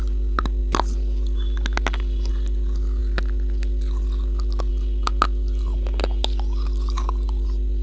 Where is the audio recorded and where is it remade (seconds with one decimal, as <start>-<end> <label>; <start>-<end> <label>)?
0.0-7.8 recorded